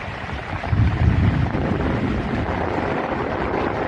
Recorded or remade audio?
recorded